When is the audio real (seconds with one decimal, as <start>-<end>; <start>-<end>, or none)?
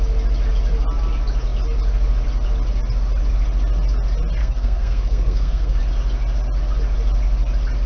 0.0-4.4; 5.8-7.9